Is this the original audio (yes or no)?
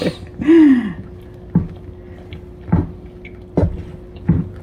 yes